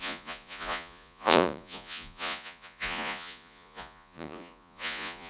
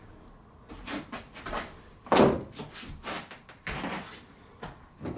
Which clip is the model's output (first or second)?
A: first